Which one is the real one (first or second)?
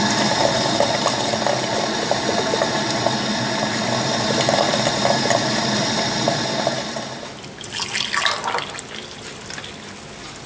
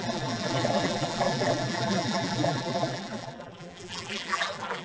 first